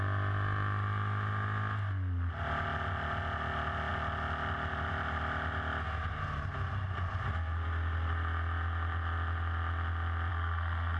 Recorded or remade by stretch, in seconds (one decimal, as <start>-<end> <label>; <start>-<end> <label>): 0.0-10.3 recorded; 10.3-11.0 remade